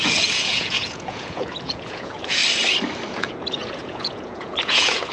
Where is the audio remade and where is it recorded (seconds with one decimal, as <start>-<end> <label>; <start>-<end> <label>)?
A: 0.0-2.4 remade; 2.4-3.1 recorded; 3.1-5.1 remade